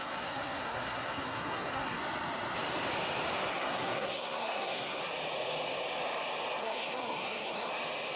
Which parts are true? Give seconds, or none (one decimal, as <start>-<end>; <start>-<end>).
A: 2.0-3.5; 5.0-6.6; 7.7-8.2